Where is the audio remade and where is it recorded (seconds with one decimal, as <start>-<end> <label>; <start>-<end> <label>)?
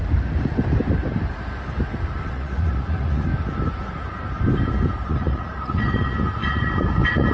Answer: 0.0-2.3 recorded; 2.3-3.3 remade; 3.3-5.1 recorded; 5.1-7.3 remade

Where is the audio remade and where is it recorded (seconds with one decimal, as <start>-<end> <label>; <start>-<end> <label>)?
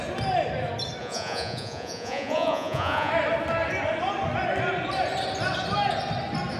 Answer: 0.0-1.0 recorded; 1.0-3.1 remade; 3.1-6.6 recorded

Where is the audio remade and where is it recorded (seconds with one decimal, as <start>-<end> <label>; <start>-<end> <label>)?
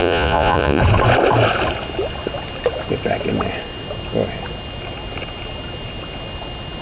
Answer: 0.0-0.8 remade; 0.8-6.8 recorded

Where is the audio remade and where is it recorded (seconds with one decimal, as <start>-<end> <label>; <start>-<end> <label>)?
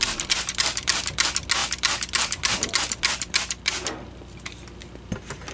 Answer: 0.0-1.0 remade; 1.0-1.6 recorded; 1.6-4.8 remade; 4.8-5.5 recorded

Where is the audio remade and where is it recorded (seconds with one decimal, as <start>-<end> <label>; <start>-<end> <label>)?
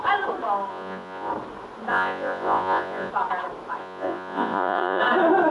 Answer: 0.0-0.7 recorded; 0.7-1.3 remade; 1.3-1.9 recorded; 1.9-3.1 remade; 3.1-3.8 recorded; 3.8-5.0 remade; 5.0-5.5 recorded